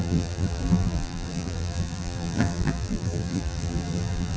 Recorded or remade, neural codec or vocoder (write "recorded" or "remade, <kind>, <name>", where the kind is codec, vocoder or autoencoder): remade, vocoder, BigVGAN v2